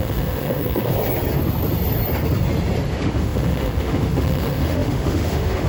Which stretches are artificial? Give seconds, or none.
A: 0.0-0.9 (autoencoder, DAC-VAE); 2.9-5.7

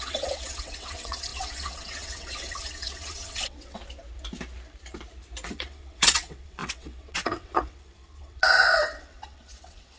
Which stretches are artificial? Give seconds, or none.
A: 0.0-3.8 (vocoder, WaveNeXt); 5.5-10.0

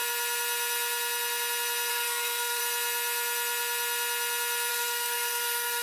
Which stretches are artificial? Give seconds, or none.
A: 1.9-2.6 (codec, SNAC); 4.7-5.8

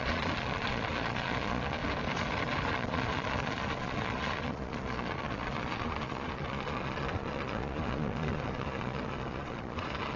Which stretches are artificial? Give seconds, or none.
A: 0.0-1.8 (vocoder, Vocos); 2.7-10.2

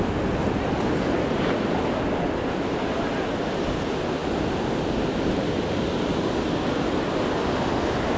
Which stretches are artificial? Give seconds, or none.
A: none

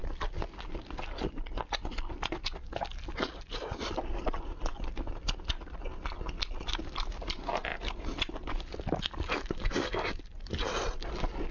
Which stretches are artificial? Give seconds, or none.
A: none